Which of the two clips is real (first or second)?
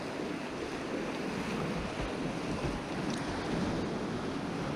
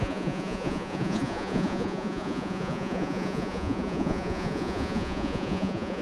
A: first